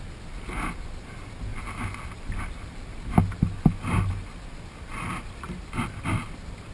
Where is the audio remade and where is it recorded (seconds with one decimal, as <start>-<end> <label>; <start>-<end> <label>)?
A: 0.0-6.7 recorded